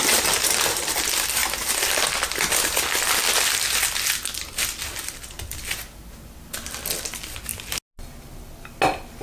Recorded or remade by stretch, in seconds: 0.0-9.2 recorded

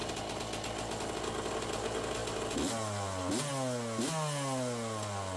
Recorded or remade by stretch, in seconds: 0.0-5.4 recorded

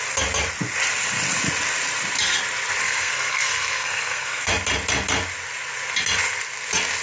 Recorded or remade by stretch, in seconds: 0.0-2.8 recorded; 2.8-4.5 remade; 4.5-7.0 recorded

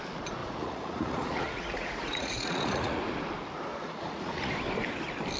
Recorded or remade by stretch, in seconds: 0.0-0.4 recorded; 0.4-3.0 remade; 3.0-3.7 recorded; 3.7-4.5 remade; 4.5-5.4 recorded